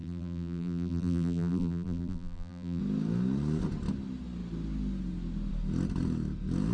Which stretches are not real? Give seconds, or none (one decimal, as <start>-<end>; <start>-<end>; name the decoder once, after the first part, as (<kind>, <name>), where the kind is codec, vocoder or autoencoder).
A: 0.0-2.8 (vocoder, BigVGAN v2)